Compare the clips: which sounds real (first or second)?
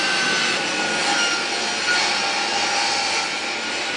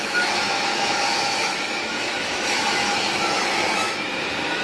first